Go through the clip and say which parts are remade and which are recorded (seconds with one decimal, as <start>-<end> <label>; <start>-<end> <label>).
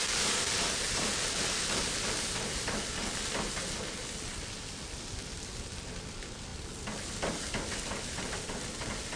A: 0.0-9.2 recorded